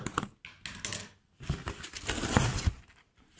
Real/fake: real